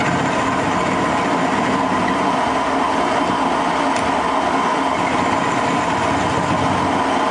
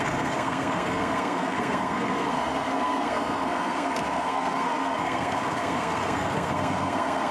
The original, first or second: first